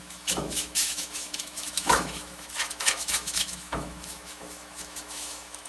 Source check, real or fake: fake